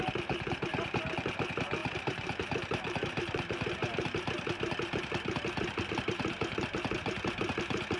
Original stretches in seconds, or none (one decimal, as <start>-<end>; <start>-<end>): none